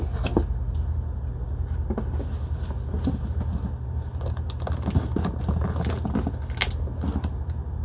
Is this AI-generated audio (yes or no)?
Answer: no